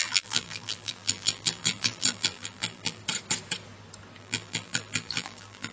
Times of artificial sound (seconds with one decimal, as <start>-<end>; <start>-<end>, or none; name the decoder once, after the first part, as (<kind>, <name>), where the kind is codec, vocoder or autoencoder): 0.0-3.0 (vocoder, BigVGAN v2); 4.2-5.7